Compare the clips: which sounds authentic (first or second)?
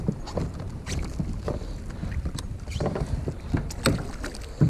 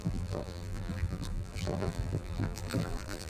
first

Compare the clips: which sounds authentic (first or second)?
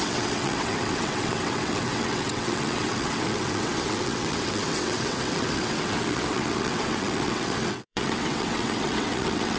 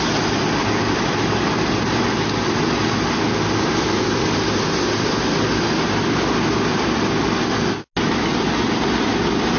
second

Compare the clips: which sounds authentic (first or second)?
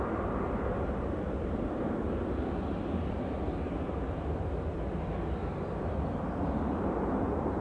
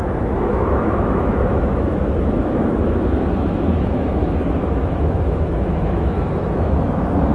first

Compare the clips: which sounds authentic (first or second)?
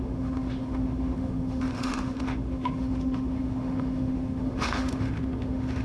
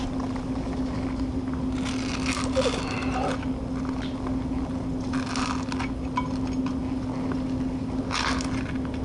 second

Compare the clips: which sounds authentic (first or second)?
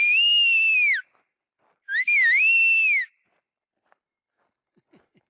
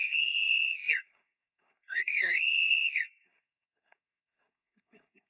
first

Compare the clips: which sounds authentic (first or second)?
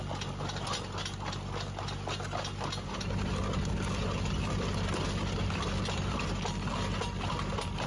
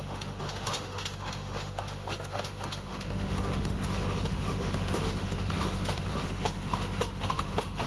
first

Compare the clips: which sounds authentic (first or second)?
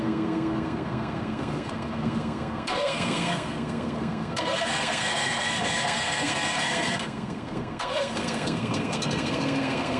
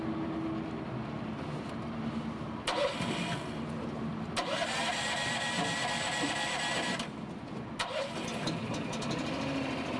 second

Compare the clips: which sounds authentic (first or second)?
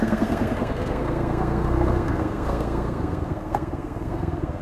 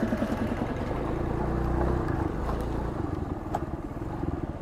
second